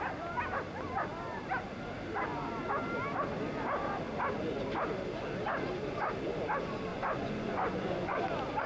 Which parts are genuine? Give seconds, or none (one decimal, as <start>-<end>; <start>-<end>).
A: 0.0-6.9; 8.2-8.7